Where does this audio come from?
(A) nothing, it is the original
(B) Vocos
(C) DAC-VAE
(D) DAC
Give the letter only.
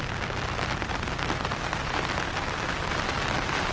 A